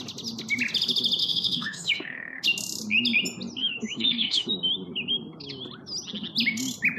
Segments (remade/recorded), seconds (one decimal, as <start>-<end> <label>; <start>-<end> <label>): 0.0-1.2 recorded; 1.2-2.4 remade; 2.4-3.6 recorded; 3.6-4.5 remade; 4.5-7.0 recorded

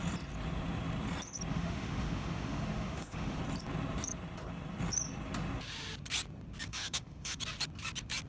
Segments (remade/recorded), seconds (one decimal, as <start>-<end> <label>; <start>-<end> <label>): 0.0-1.5 recorded; 1.5-3.4 remade; 3.4-6.7 recorded; 6.7-7.4 remade; 7.4-8.3 recorded

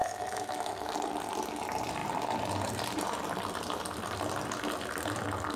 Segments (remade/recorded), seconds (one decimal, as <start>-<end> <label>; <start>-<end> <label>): 0.0-0.9 remade; 0.9-5.6 recorded

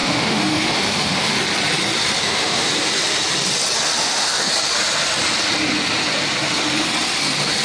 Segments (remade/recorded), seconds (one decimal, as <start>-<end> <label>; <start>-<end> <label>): 0.0-1.4 remade; 1.4-2.2 recorded; 2.2-2.7 remade; 2.7-4.0 recorded; 4.0-4.5 remade; 4.5-7.6 recorded